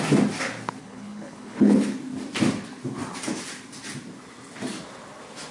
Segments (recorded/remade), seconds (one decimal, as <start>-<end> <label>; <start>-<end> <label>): 0.0-0.8 recorded; 0.8-1.9 remade; 1.9-5.5 recorded